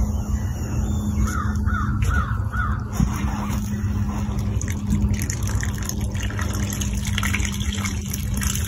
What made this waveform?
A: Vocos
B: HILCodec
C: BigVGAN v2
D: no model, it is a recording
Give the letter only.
D